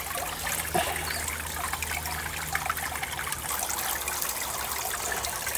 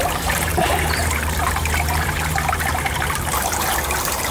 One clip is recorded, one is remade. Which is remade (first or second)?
second